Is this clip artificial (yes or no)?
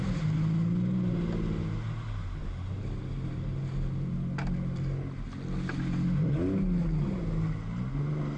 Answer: no